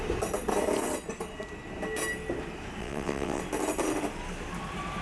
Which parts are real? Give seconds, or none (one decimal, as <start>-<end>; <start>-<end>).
0.0-2.8; 3.4-5.0